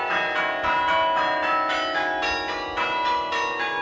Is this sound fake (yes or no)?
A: no